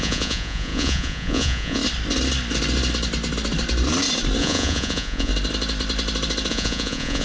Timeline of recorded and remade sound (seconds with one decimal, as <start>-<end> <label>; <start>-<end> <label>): 0.0-1.8 remade; 1.8-4.4 recorded; 4.4-5.3 remade; 5.3-6.5 recorded; 6.5-7.2 remade